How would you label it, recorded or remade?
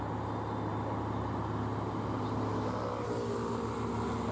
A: recorded